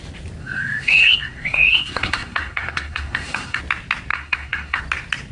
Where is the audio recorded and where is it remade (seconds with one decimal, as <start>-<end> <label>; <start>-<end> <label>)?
0.0-0.4 recorded; 0.4-3.6 remade; 3.6-4.1 recorded; 4.1-4.8 remade; 4.8-5.3 recorded